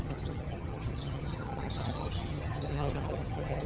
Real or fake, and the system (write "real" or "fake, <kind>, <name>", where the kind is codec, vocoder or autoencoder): fake, vocoder, HiFi-GAN